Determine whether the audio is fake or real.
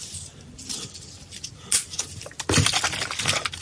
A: real